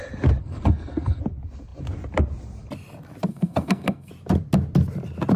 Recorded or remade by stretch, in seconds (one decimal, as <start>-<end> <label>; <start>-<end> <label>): 0.0-0.4 recorded; 0.4-1.2 remade; 1.2-3.3 recorded; 3.3-4.1 remade; 4.1-5.4 recorded